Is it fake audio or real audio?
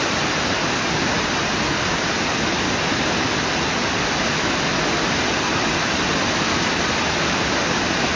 real